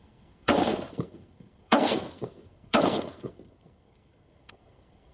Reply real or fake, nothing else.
fake